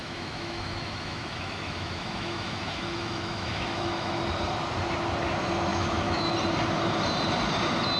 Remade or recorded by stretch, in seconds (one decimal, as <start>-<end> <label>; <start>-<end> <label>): 0.0-4.2 remade; 4.2-5.7 recorded; 5.7-6.3 remade; 6.3-8.0 recorded